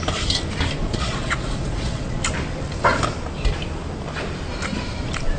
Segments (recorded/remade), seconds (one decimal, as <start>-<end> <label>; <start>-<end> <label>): 0.0-0.8 recorded; 0.8-2.2 remade; 2.2-5.4 recorded